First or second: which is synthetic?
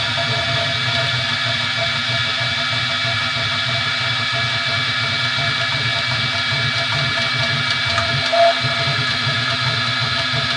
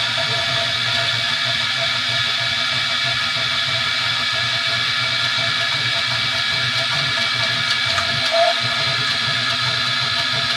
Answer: second